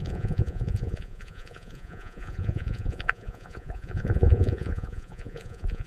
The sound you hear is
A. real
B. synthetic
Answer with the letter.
B